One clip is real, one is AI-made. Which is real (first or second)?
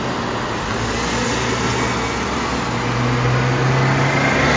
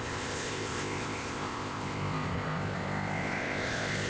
first